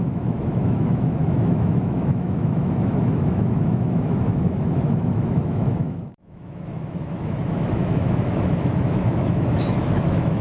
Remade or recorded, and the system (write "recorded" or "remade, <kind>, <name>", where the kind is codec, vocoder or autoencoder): remade, autoencoder, DAC-VAE